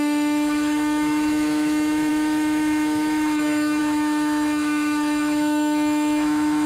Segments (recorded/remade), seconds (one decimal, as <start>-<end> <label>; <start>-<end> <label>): 0.0-6.7 remade